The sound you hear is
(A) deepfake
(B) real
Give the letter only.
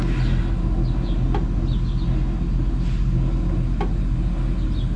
B